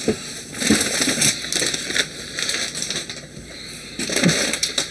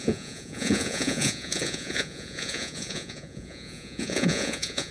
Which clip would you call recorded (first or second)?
first